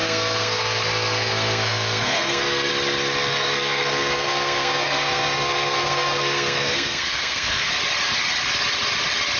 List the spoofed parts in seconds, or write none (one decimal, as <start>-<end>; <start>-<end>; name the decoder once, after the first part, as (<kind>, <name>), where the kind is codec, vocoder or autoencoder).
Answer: 0.0-2.7 (codec, SNAC); 3.3-7.7